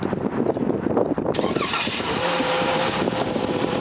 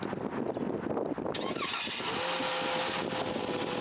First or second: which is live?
second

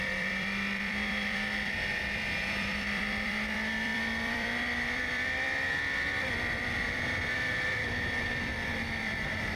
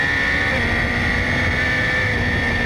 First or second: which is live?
second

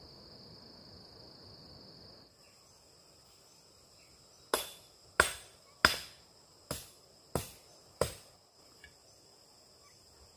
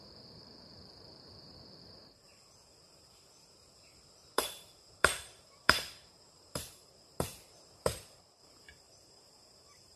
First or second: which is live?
first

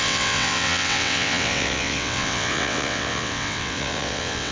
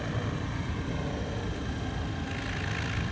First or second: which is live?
second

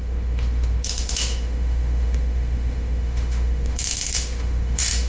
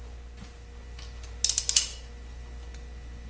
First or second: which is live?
second